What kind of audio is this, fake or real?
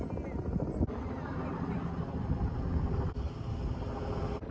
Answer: real